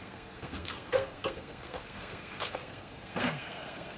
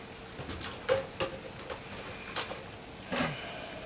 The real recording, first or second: second